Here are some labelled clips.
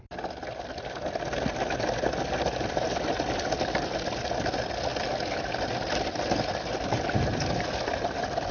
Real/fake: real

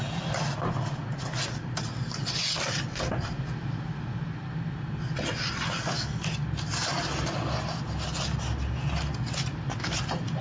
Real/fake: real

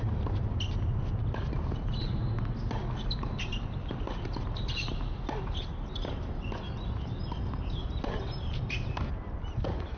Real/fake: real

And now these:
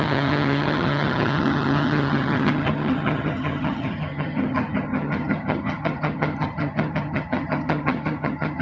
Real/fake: fake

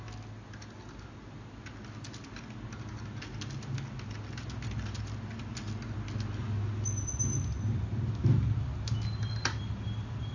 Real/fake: real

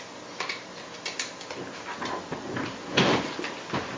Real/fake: real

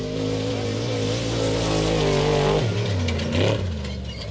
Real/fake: real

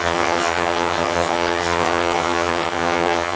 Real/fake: fake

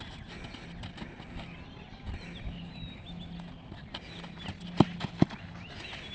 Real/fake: real